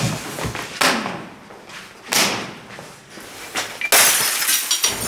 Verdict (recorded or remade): recorded